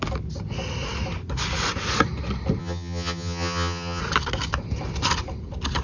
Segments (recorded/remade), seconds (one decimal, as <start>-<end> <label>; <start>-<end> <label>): 0.0-2.6 recorded; 2.6-4.0 remade; 4.0-5.8 recorded